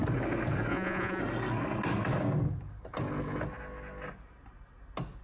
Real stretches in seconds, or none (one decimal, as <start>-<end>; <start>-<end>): 0.0-0.7; 1.2-5.2